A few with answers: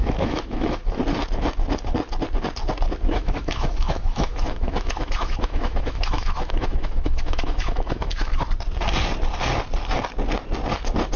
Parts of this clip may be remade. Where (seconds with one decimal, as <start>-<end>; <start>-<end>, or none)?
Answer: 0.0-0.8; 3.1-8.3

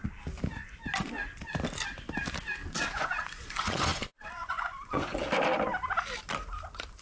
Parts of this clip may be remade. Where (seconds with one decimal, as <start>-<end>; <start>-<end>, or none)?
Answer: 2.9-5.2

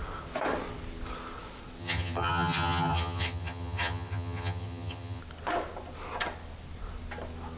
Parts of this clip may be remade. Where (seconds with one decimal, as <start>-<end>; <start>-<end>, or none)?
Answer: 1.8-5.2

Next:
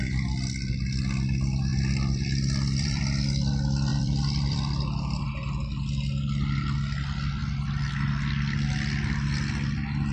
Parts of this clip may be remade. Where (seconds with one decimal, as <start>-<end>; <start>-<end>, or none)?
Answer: 1.7-3.0; 3.9-5.3

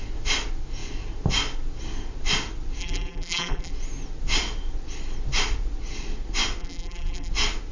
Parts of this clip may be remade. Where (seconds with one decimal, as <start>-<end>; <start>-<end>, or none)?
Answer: 2.8-3.7; 6.6-7.3